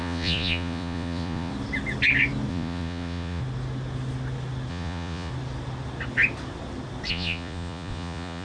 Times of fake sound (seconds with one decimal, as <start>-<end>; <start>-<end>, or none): 0.0-1.5; 2.5-3.4; 4.7-5.3; 7.1-8.4